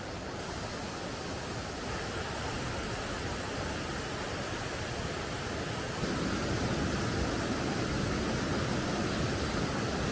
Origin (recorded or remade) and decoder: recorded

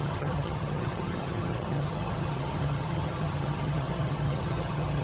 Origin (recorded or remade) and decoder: remade, vocoder, HiFi-GAN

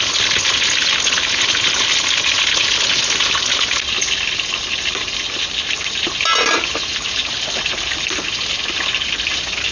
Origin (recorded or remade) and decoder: recorded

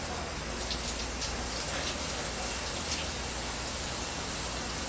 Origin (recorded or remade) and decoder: recorded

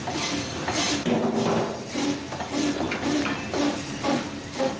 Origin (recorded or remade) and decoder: recorded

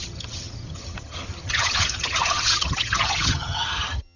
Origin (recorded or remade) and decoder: remade, vocoder, HiFi-GAN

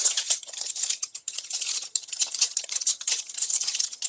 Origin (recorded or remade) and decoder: remade, vocoder, HiFi-GAN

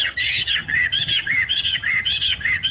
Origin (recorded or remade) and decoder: remade, vocoder, HiFi-GAN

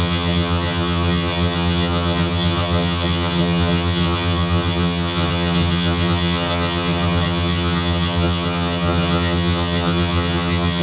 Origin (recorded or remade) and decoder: remade, vocoder, HiFi-GAN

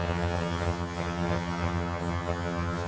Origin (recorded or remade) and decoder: remade, vocoder, HiFi-GAN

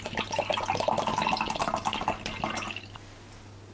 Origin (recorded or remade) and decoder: recorded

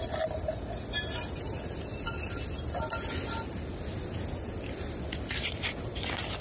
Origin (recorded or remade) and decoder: recorded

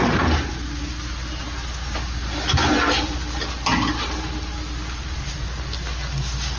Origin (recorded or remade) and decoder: recorded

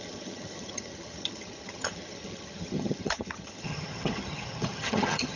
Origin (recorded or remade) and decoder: remade, vocoder, HiFi-GAN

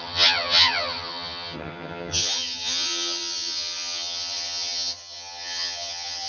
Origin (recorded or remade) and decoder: remade, vocoder, HiFi-GAN